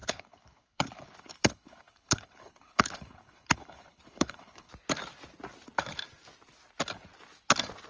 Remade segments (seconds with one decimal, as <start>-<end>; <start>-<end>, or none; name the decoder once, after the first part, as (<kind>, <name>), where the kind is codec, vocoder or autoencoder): 0.0-4.7 (codec, HILCodec)